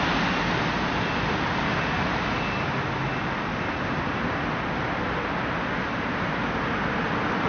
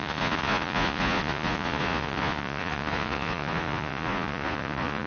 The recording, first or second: first